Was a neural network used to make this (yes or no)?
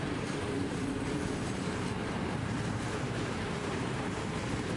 yes